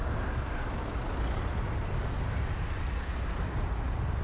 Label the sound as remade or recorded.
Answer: recorded